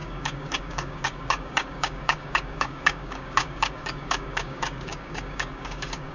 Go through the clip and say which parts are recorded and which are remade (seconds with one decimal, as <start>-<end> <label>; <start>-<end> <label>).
0.0-6.1 remade